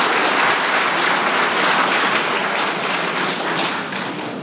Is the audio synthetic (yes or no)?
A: no